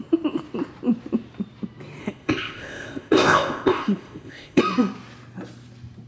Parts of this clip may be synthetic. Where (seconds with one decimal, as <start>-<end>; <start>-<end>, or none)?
2.0-4.6